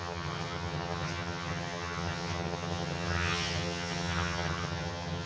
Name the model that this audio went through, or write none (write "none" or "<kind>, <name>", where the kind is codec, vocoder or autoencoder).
vocoder, HiFi-GAN